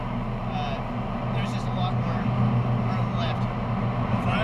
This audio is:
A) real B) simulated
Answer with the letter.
A